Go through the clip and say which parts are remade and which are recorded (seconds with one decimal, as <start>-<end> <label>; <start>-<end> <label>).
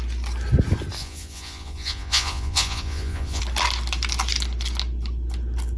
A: 0.0-1.0 recorded; 1.0-3.4 remade; 3.4-5.8 recorded